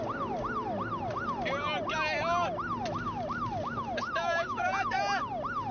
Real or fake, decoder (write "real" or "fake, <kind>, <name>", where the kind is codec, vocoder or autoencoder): real